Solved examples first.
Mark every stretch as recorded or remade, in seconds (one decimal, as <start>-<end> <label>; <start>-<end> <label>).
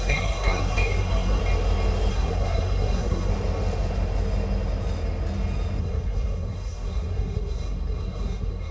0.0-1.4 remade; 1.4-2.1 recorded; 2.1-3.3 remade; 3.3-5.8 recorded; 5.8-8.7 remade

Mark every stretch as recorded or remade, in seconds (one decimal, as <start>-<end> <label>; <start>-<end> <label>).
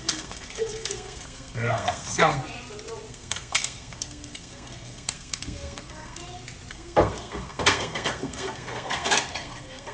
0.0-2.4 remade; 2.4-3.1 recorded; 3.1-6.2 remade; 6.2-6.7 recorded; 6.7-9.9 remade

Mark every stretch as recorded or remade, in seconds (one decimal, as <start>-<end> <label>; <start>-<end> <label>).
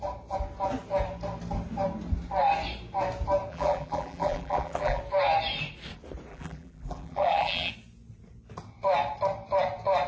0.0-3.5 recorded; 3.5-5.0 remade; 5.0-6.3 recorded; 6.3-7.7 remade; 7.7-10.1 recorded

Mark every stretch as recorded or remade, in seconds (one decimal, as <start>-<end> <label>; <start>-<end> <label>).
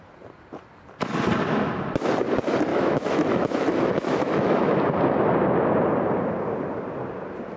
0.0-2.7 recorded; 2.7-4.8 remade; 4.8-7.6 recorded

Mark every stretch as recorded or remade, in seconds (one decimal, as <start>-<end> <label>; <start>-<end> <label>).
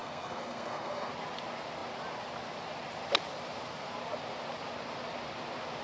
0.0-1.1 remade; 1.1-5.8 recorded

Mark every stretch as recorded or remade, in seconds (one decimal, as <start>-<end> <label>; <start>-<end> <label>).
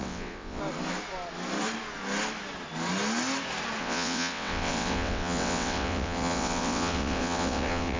0.0-0.6 remade; 0.6-3.8 recorded; 3.8-8.0 remade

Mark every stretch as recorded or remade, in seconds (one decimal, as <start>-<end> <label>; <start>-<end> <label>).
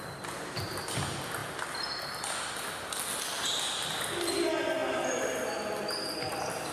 0.0-6.7 recorded